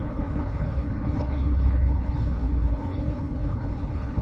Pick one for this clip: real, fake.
fake